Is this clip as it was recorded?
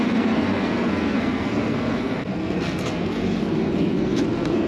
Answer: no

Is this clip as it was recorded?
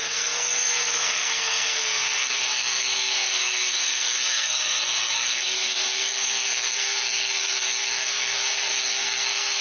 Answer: no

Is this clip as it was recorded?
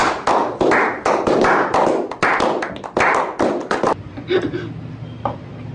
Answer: yes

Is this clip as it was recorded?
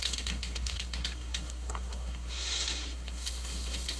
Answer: no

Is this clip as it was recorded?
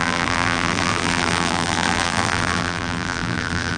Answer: no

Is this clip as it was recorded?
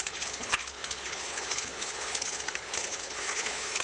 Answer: no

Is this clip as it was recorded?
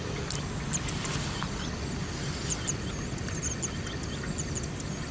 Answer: yes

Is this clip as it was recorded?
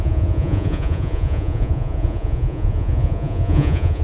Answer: no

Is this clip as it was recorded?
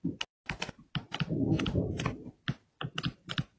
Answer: yes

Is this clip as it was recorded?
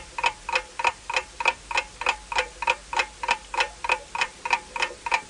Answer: yes